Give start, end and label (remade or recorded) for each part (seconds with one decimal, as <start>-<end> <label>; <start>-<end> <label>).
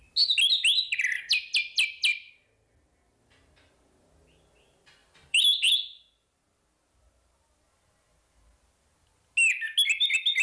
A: 0.0-5.0 recorded; 5.0-5.7 remade; 5.7-10.4 recorded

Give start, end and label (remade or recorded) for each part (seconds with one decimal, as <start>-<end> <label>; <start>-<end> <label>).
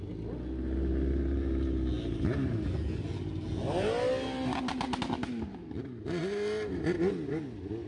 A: 0.0-7.9 recorded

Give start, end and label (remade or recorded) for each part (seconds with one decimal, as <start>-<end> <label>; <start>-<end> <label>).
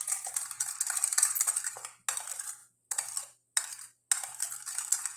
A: 0.0-5.2 recorded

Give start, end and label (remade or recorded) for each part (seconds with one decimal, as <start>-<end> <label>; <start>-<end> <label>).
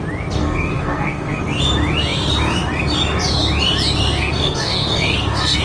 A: 0.0-0.4 recorded; 0.4-1.4 remade; 1.4-4.2 recorded; 4.2-5.6 remade